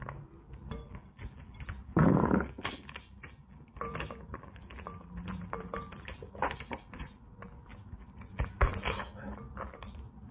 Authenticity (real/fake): fake